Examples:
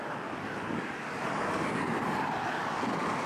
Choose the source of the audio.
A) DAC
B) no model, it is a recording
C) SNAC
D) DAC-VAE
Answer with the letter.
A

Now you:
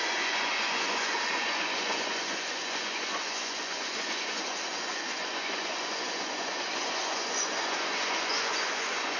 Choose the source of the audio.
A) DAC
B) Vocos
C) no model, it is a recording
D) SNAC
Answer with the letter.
B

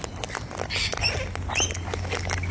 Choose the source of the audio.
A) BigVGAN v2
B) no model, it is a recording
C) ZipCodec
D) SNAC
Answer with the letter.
B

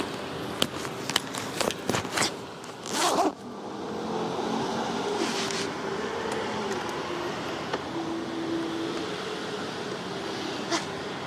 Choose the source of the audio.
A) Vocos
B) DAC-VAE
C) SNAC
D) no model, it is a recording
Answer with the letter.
D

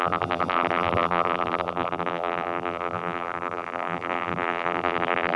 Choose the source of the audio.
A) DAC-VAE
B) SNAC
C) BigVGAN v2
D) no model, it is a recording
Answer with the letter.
C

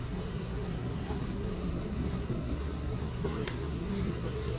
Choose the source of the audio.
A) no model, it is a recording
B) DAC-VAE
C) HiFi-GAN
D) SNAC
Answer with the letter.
D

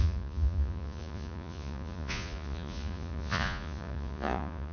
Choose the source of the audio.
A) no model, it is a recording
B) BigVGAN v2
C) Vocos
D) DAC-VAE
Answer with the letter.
C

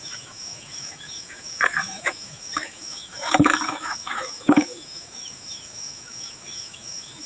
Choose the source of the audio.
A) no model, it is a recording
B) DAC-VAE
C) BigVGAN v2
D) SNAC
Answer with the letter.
B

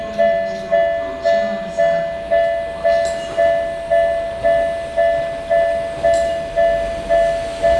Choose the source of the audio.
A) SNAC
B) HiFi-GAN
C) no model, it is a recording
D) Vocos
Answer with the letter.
C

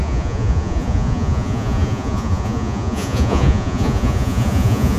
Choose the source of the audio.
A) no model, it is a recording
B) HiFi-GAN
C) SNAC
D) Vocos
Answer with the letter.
D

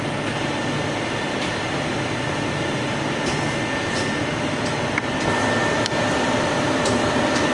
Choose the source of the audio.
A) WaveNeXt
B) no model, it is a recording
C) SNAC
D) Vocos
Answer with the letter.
B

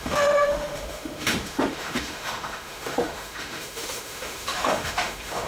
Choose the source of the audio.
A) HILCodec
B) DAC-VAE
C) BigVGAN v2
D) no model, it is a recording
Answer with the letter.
B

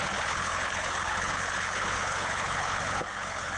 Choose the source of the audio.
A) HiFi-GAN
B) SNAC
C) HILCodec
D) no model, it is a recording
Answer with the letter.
C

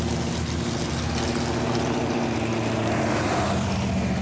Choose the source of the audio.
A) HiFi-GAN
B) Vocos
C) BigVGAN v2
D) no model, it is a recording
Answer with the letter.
D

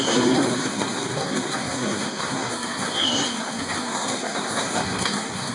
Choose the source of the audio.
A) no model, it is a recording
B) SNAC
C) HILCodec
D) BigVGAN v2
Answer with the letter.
B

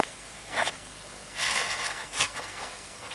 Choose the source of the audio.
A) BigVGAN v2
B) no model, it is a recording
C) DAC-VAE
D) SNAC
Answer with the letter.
D